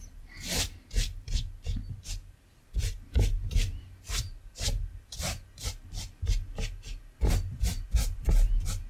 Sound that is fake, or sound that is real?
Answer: real